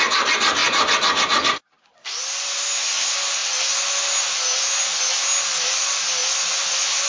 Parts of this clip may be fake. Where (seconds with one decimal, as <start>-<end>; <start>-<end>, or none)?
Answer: none